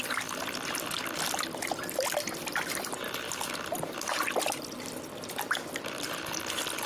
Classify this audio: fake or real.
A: real